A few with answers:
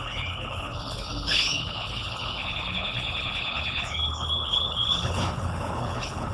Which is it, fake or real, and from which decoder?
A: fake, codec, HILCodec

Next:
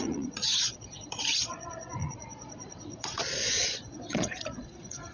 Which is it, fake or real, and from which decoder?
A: fake, vocoder, Vocos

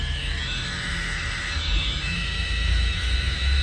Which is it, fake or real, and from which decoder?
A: fake, autoencoder, DAC-VAE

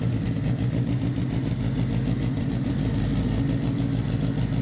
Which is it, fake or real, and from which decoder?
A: real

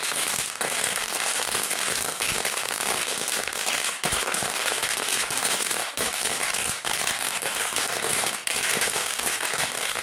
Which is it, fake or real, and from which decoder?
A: fake, codec, DAC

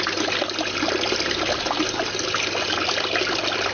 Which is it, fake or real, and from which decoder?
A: real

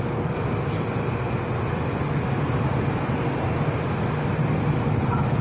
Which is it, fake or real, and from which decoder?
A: real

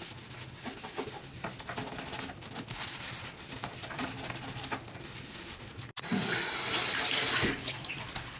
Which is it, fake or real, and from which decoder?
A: real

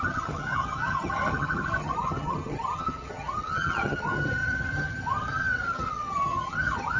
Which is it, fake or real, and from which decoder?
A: fake, vocoder, HiFi-GAN